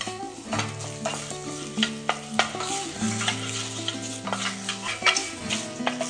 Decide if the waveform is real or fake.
real